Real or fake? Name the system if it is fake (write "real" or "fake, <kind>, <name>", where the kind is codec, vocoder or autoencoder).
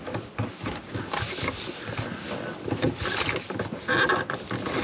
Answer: real